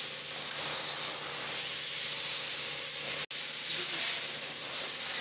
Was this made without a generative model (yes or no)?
yes